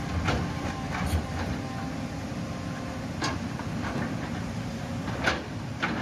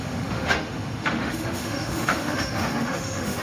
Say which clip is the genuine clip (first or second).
first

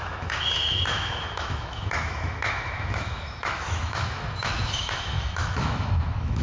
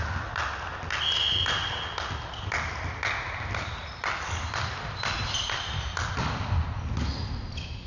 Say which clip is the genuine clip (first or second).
second